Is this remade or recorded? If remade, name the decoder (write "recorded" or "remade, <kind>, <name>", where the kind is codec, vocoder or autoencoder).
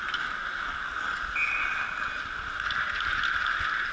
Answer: recorded